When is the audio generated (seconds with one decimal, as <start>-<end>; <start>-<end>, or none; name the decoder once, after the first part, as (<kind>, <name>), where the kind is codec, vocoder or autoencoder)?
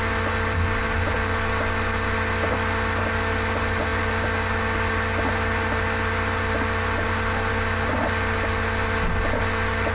none